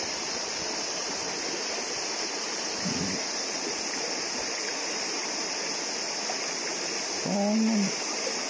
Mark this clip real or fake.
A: real